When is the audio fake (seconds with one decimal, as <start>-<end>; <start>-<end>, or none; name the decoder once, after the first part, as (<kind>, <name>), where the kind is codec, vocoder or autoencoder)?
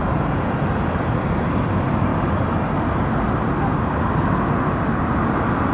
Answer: 0.0-1.1 (vocoder, Vocos)